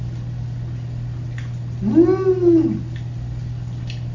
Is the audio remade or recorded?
recorded